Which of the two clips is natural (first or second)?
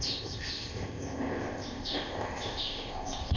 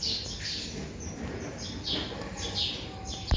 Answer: second